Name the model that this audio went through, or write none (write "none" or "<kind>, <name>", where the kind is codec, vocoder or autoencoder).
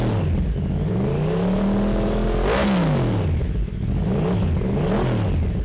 none